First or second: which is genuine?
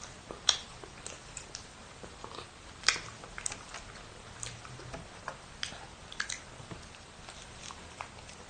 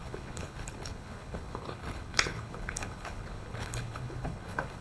first